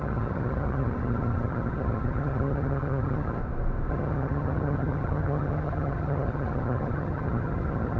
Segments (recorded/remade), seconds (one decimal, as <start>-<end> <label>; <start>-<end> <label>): 0.0-3.4 remade; 3.4-3.9 recorded; 3.9-8.0 remade

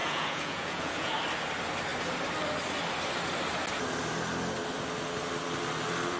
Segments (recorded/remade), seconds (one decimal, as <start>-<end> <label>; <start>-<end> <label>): 0.0-1.1 remade; 1.1-6.2 recorded

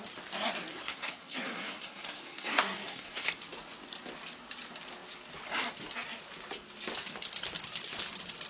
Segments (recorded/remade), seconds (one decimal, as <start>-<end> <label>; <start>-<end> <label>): 0.0-0.7 recorded; 0.7-3.3 remade; 3.3-8.5 recorded

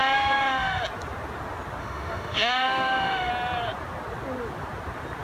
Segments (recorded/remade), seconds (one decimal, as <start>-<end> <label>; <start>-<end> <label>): 0.0-0.8 remade; 0.8-1.8 recorded; 1.8-3.3 remade; 3.3-5.2 recorded

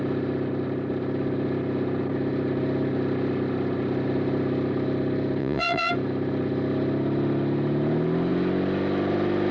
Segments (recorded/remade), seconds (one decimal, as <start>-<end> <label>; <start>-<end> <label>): 0.0-5.4 recorded; 5.4-5.9 remade; 5.9-9.5 recorded

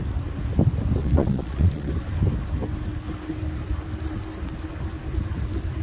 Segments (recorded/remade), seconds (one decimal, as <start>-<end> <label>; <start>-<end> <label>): 0.0-1.0 recorded; 1.0-1.9 remade; 1.9-5.8 recorded